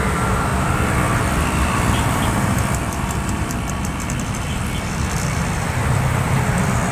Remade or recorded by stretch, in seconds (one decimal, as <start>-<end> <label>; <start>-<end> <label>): 0.0-6.9 remade

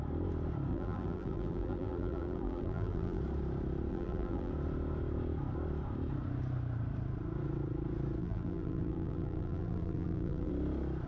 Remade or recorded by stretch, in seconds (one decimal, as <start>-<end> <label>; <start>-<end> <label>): 0.0-0.7 recorded; 0.7-3.2 remade; 3.2-3.9 recorded; 3.9-4.5 remade; 4.5-8.2 recorded; 8.2-10.5 remade; 10.5-11.1 recorded

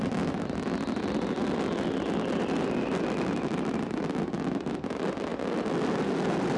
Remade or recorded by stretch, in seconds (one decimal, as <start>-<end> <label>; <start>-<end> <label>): 0.0-6.6 remade